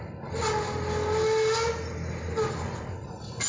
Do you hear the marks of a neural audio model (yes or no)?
no